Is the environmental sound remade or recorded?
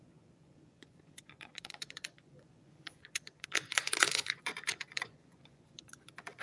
remade